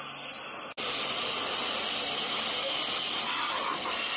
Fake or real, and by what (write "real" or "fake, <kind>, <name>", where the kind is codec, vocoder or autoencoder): real